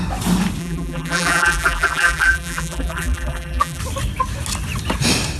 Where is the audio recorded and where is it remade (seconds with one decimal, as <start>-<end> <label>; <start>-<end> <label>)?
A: 0.0-0.6 recorded; 0.6-3.8 remade; 3.8-5.4 recorded